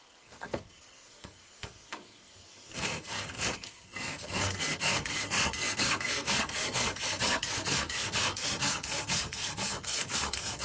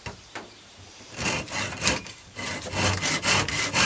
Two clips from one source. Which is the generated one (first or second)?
first